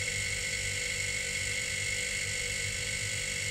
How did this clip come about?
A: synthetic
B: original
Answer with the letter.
A